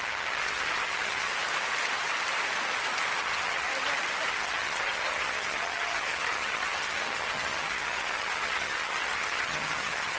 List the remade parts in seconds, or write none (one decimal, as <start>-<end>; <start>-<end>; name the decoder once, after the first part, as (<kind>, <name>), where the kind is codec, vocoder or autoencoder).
0.0-1.3 (vocoder, HiFi-GAN); 3.2-3.7; 4.3-10.2